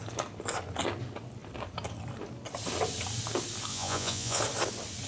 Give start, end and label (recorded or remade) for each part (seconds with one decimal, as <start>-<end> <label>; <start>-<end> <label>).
0.0-3.7 recorded; 3.7-4.4 remade; 4.4-5.1 recorded